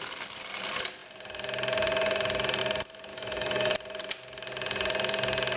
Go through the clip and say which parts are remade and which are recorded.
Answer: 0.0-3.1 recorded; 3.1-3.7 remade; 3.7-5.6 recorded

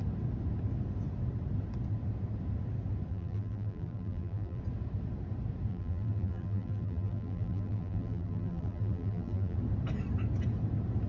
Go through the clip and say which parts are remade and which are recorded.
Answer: 0.0-3.1 recorded; 3.1-4.6 remade; 4.6-5.7 recorded; 5.7-9.6 remade; 9.6-11.1 recorded

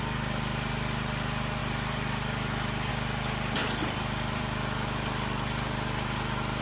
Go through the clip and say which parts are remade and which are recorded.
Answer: 0.0-6.6 remade

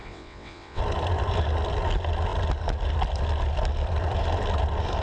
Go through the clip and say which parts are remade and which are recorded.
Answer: 0.0-0.8 remade; 0.8-5.0 recorded